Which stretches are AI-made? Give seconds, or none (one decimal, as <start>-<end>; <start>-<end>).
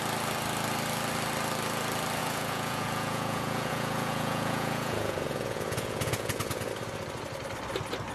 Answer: 2.2-6.7